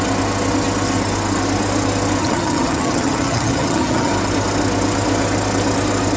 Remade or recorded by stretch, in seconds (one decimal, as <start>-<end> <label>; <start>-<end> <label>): 0.0-2.2 recorded; 2.2-4.1 remade; 4.1-6.2 recorded